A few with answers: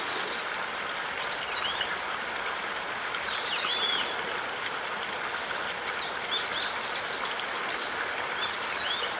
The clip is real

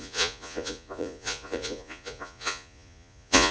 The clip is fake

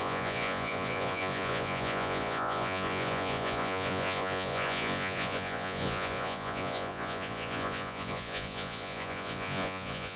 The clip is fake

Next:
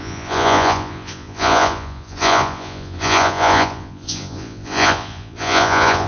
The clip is fake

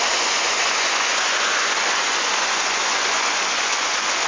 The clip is fake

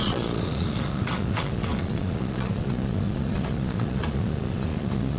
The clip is fake